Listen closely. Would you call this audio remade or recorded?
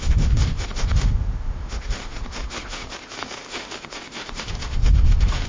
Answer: remade